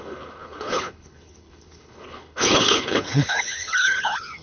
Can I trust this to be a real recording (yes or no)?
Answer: no